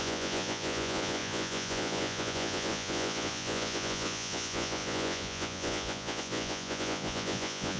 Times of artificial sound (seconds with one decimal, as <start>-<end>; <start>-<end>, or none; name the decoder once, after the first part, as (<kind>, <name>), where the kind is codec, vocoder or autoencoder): 0.0-7.8 (vocoder, Vocos)